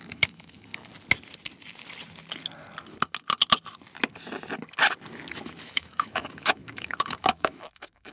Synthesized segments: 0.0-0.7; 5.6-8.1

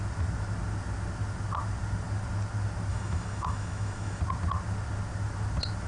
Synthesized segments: 2.9-4.2